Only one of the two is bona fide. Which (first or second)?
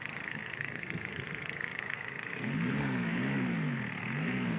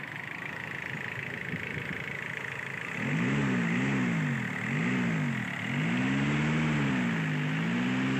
second